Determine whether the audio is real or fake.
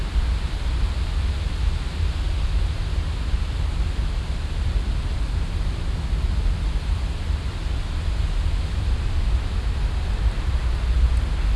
real